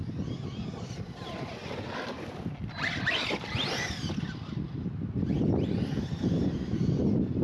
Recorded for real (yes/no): yes